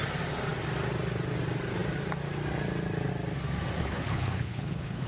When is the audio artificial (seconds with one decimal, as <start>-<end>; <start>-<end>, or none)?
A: 3.8-5.1